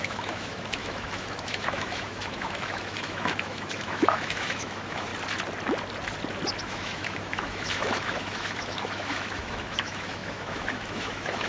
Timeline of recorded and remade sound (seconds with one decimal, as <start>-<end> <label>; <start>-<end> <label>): 0.0-5.1 remade; 5.1-6.6 recorded; 6.6-11.5 remade